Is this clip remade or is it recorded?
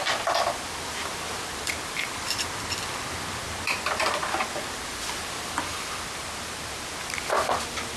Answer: remade